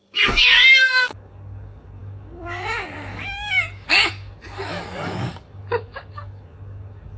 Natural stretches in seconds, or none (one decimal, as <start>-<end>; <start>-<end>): none